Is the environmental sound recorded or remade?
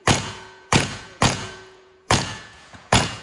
remade